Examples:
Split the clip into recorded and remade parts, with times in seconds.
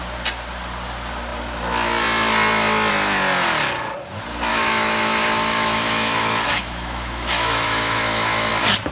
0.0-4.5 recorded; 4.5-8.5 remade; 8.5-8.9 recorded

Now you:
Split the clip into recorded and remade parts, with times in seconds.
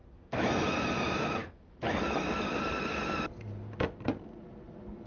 0.0-0.9 remade; 0.9-1.4 recorded; 1.4-2.3 remade; 2.3-5.1 recorded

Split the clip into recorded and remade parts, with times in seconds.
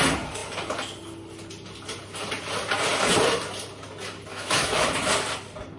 0.0-4.3 recorded; 4.3-5.1 remade; 5.1-5.8 recorded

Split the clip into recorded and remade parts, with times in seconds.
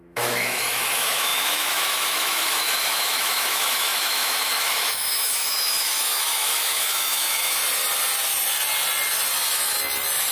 0.0-7.6 remade; 7.6-10.3 recorded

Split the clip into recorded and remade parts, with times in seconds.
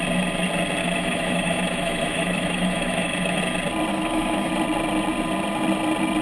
0.0-0.8 recorded; 0.8-3.4 remade; 3.4-3.9 recorded; 3.9-4.5 remade; 4.5-6.2 recorded